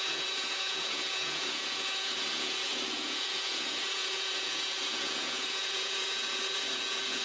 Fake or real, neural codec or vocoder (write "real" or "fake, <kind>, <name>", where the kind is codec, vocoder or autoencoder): fake, vocoder, Vocos